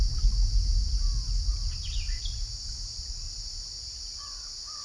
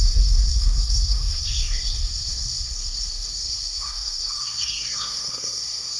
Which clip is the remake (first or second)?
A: second